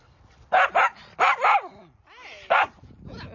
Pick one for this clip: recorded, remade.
recorded